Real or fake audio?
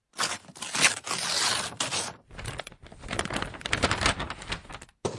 real